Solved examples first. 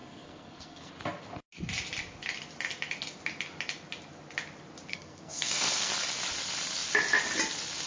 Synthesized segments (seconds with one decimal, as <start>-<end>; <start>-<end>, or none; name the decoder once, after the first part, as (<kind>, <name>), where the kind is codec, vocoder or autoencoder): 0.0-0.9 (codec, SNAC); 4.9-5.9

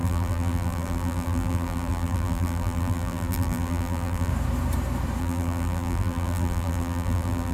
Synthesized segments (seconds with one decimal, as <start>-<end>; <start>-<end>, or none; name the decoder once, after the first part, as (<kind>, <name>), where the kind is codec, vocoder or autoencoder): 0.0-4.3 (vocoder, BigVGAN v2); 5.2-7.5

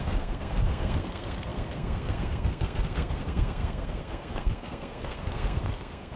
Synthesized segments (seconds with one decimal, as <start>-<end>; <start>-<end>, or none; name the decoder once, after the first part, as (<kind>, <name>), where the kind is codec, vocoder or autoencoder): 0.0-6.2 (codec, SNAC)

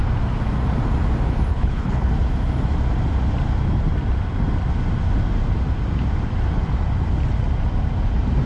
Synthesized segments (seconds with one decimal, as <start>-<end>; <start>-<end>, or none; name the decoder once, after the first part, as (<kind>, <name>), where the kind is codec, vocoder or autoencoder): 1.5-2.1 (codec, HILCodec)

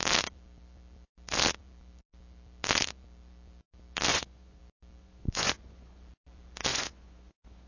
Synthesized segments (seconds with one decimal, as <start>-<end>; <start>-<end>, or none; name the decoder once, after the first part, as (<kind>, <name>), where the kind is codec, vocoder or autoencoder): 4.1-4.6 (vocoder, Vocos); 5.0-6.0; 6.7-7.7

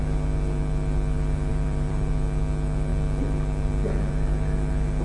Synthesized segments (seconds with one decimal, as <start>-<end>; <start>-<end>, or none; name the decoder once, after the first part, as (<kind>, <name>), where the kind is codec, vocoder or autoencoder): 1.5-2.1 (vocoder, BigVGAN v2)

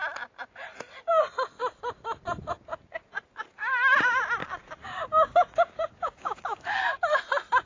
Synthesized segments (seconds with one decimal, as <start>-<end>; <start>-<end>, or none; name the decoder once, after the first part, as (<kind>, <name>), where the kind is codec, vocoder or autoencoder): 4.4-6.8 (codec, DAC)